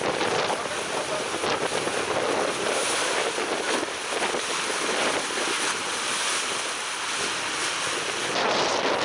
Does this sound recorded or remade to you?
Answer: recorded